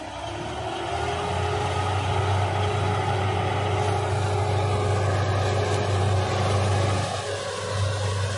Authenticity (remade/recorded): recorded